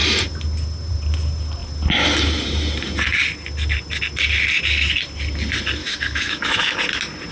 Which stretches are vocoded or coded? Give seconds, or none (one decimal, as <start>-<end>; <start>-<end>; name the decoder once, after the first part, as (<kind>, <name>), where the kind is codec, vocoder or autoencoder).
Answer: 5.8-6.8 (autoencoder, DAC-VAE)